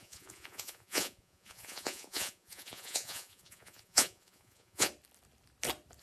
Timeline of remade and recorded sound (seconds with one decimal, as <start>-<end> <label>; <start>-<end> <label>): 0.0-4.9 remade; 4.9-6.0 recorded